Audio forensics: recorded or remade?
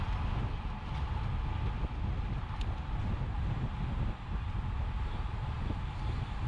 recorded